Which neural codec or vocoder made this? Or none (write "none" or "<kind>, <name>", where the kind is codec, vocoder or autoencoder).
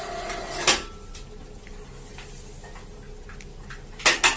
none